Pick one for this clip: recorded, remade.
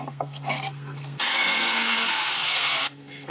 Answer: remade